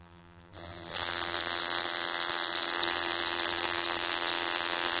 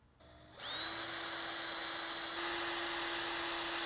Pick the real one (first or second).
second